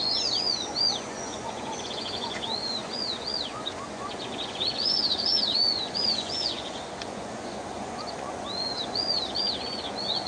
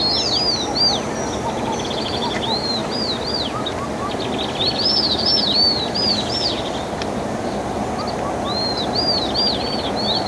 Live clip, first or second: second